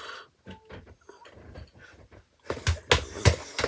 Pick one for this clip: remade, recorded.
recorded